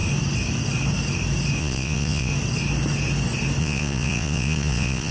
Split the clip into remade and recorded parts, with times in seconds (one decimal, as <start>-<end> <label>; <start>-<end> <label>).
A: 0.0-1.6 recorded; 1.6-2.3 remade; 2.3-3.6 recorded; 3.6-5.1 remade